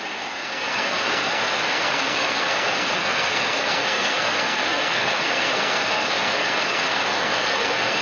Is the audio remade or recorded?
remade